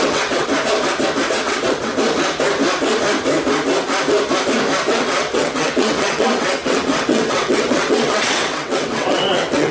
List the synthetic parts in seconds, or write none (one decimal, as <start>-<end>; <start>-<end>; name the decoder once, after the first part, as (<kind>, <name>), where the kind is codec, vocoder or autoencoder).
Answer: 0.0-0.5 (vocoder, WaveNeXt); 1.3-1.9; 4.9-9.7